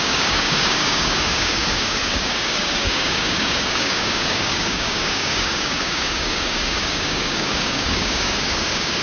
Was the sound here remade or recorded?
remade